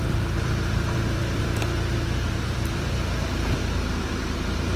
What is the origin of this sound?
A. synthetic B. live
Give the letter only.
A